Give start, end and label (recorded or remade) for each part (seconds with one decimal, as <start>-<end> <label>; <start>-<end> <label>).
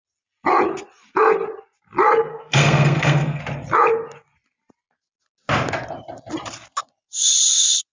0.0-2.3 recorded; 2.3-3.4 remade; 3.4-7.9 recorded